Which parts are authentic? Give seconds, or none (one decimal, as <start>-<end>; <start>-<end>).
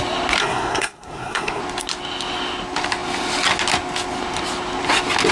0.0-0.4; 1.6-5.3